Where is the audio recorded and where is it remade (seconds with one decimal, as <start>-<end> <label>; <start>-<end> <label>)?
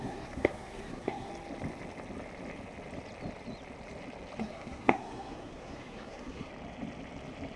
0.0-1.3 remade; 1.3-4.4 recorded; 4.4-6.5 remade; 6.5-7.6 recorded